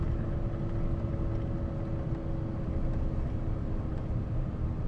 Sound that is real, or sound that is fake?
real